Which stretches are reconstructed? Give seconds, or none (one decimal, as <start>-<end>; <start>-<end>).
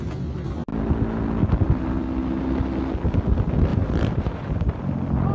3.7-4.8